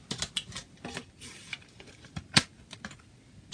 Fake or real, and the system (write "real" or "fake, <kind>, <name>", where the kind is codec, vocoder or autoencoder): real